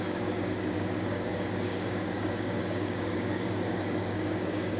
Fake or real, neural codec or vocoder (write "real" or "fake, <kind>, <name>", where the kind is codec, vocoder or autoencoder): fake, codec, DAC